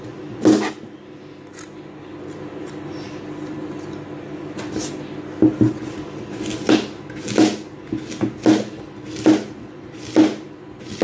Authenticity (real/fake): real